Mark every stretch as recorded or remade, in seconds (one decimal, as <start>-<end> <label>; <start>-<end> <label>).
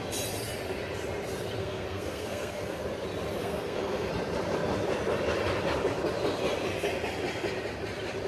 0.0-1.6 recorded; 1.6-2.8 remade; 2.8-3.4 recorded; 3.4-4.1 remade; 4.1-8.3 recorded